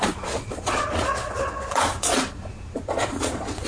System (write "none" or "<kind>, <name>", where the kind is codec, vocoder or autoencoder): vocoder, Vocos